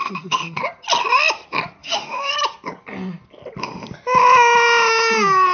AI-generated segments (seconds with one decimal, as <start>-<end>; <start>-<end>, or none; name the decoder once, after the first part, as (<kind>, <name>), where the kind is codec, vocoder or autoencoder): 0.0-0.6 (autoencoder, DAC-VAE); 1.8-2.3